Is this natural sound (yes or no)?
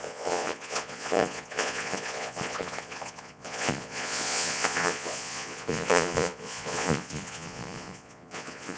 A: no